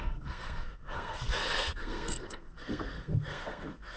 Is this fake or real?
fake